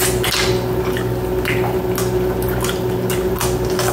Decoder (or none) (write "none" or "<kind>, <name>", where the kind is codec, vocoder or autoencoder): none